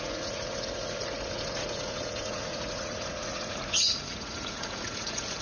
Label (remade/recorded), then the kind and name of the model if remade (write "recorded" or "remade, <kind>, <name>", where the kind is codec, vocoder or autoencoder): remade, vocoder, Vocos